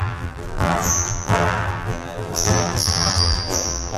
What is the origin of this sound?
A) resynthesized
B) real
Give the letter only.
A